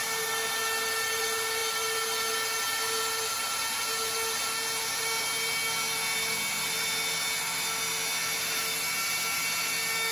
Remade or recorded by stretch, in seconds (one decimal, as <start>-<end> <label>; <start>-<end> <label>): 0.0-10.1 recorded